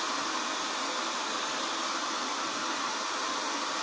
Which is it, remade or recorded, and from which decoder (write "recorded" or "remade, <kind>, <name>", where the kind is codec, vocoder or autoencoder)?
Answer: recorded